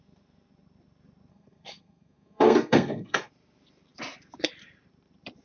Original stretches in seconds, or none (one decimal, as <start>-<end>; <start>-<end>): 0.0-1.3; 3.3-5.4